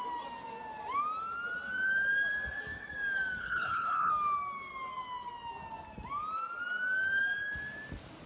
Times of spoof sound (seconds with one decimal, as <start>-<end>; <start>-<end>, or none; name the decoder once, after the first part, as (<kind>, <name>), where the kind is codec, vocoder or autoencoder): 3.4-4.1 (codec, HILCodec)